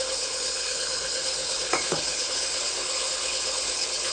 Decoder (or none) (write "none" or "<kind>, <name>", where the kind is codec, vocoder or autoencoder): codec, HILCodec